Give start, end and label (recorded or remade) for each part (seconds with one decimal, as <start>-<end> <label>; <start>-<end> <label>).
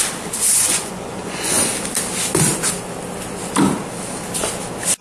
0.0-0.5 recorded; 0.5-1.7 remade; 1.7-5.0 recorded